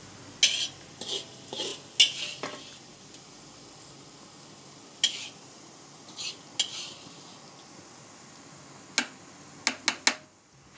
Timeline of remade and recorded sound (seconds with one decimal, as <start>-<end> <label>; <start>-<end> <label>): 0.0-10.8 recorded